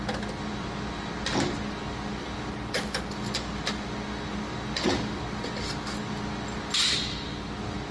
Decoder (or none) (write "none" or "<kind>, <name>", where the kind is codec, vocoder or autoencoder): none